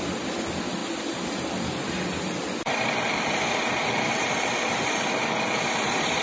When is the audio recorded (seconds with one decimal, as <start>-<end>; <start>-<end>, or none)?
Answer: 0.0-6.2